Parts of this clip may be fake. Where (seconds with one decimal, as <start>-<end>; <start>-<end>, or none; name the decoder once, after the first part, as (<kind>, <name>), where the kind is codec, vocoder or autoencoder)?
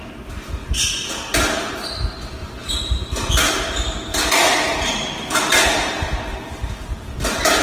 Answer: 0.6-1.7 (vocoder, BigVGAN v2); 2.4-3.3; 4.1-5.6